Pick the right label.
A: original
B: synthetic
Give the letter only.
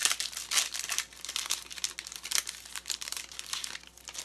A